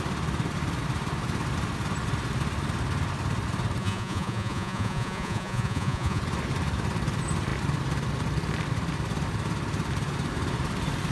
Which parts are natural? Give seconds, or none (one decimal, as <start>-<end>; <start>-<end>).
0.0-3.8; 6.2-11.1